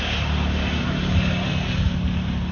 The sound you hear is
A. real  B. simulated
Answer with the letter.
A